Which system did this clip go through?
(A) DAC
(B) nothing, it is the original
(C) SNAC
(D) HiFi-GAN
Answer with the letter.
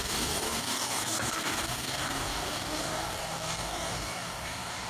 A